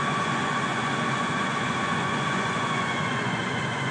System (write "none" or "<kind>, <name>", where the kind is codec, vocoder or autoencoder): vocoder, Vocos